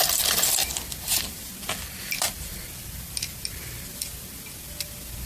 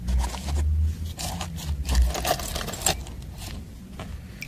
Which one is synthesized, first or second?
first